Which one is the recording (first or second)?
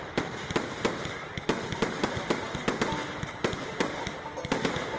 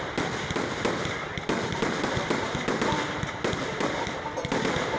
first